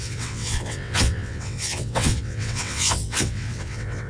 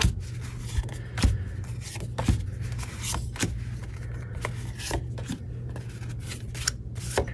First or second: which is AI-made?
first